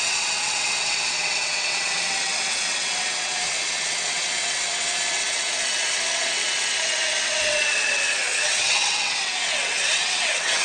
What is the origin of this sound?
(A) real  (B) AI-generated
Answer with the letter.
B